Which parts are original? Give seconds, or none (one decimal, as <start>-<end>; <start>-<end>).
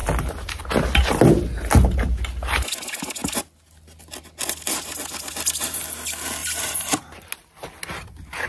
0.0-6.4; 7.0-8.5